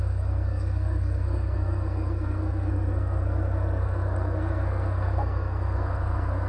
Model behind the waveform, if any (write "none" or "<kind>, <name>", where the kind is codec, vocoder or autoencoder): codec, SNAC